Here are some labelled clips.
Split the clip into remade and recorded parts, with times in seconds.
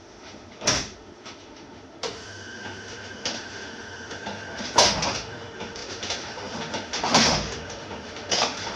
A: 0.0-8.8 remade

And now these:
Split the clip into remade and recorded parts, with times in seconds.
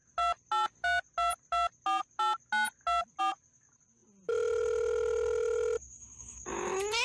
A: 0.0-7.0 recorded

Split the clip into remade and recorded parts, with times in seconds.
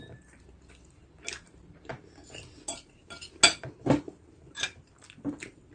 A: 0.0-5.7 recorded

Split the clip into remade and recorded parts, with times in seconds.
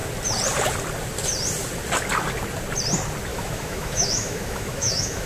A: 0.0-3.3 recorded; 3.3-5.3 remade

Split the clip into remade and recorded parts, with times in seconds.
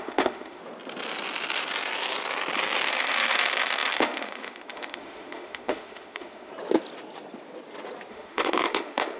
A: 0.0-0.6 remade; 0.6-2.9 recorded; 2.9-6.5 remade; 6.5-8.1 recorded; 8.1-9.2 remade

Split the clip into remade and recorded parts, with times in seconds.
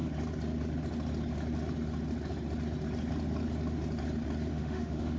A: 0.0-4.5 recorded; 4.5-5.2 remade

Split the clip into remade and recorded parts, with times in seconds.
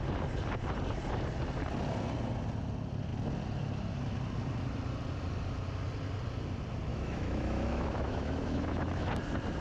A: 0.0-6.9 recorded; 6.9-9.1 remade; 9.1-9.6 recorded